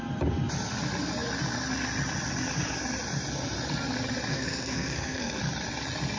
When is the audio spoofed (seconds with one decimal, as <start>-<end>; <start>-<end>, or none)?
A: 4.3-5.4